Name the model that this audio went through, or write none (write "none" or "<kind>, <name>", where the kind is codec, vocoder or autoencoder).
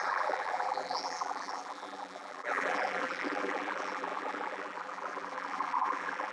vocoder, BigVGAN v2